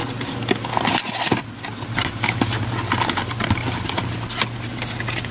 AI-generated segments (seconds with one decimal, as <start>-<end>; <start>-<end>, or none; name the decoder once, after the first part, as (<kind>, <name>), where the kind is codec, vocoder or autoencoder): none